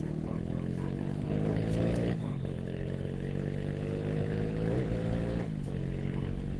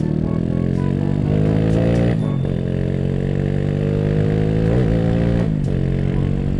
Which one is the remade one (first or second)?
first